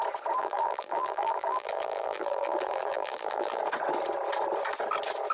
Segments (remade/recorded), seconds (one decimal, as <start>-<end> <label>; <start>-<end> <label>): 0.0-0.4 recorded; 0.4-3.6 remade; 3.6-5.3 recorded